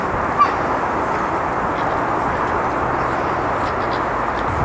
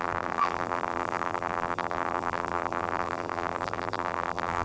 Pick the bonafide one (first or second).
first